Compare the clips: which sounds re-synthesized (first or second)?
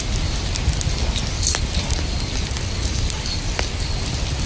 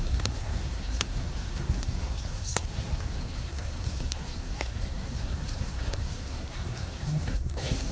second